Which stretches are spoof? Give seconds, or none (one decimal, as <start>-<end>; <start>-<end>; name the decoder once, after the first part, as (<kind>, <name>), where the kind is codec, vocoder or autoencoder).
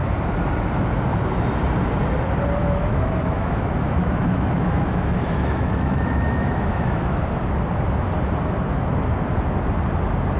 2.6-7.2 (autoencoder, DAC-VAE)